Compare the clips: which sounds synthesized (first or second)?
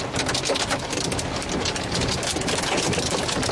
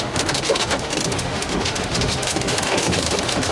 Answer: second